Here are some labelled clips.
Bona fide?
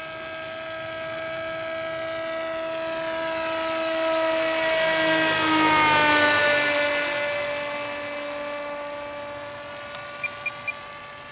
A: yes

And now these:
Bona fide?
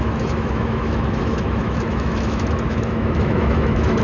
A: no